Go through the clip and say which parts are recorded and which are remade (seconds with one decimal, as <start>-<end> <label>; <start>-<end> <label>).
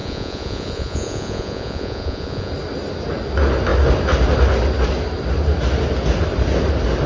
0.0-2.5 remade; 2.5-7.1 recorded